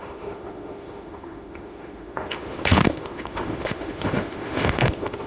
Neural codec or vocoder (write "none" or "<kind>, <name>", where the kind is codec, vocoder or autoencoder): autoencoder, DAC-VAE